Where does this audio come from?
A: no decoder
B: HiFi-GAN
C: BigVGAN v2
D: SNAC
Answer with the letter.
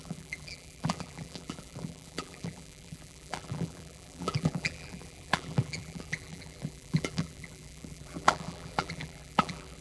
C